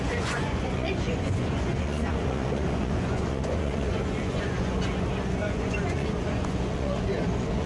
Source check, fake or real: fake